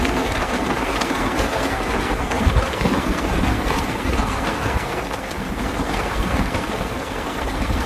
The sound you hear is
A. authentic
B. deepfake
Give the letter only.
B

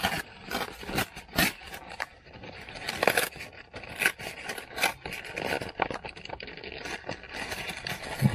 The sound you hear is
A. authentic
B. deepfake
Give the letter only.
A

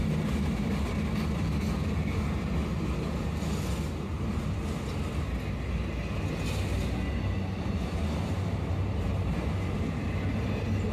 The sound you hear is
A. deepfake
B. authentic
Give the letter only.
B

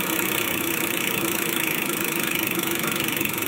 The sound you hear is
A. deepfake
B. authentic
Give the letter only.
A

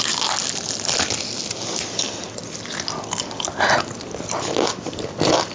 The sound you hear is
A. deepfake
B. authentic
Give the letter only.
B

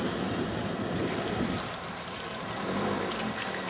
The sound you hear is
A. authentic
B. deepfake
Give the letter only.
A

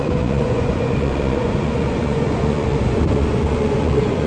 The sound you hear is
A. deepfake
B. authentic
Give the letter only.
A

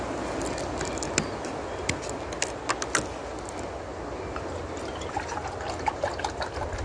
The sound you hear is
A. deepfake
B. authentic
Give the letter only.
B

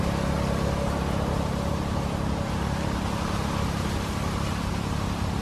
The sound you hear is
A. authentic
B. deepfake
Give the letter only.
A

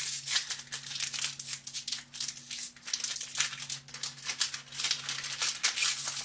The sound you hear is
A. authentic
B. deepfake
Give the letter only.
A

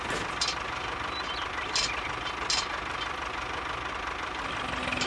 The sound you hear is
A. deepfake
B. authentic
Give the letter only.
B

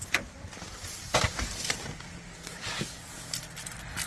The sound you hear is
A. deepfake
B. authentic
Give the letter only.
B